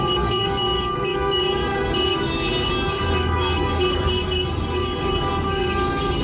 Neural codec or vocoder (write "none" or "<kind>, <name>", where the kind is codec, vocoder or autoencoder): codec, DAC